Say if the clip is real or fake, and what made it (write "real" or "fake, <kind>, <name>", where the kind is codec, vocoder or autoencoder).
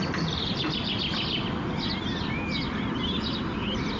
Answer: real